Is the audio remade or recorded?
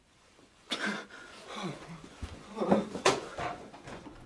remade